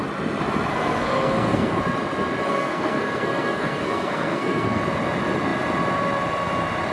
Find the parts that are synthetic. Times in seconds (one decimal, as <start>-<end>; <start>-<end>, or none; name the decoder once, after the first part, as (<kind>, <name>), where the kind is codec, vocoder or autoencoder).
0.7-1.8 (codec, SNAC); 2.5-4.8